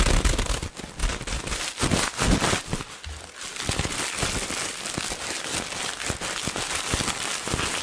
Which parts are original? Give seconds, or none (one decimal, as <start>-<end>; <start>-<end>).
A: 0.0-7.8